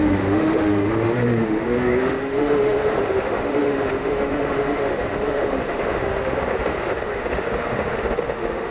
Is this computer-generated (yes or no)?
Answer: yes